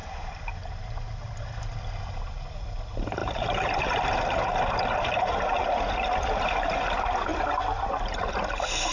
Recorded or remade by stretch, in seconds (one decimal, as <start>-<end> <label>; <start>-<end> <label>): 0.0-0.7 remade; 0.7-3.2 recorded; 3.2-5.4 remade; 5.4-8.9 recorded